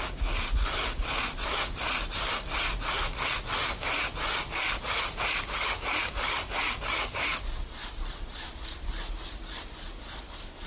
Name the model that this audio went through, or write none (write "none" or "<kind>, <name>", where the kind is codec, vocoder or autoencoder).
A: none